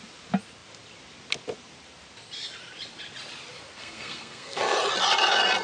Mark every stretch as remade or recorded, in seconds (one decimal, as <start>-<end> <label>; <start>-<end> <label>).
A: 0.0-3.8 recorded; 3.8-4.6 remade; 4.6-5.6 recorded